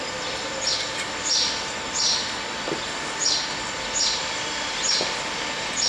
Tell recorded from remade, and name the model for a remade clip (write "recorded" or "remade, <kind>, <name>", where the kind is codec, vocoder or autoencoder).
recorded